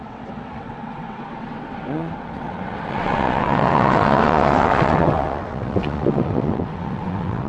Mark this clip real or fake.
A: fake